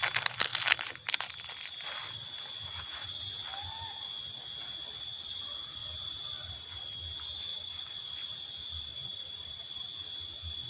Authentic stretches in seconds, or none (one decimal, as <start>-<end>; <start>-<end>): 0.0-7.5; 8.1-10.7